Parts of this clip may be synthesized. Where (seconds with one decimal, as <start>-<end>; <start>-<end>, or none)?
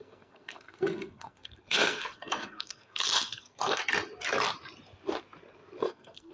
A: 0.0-3.8; 5.8-6.3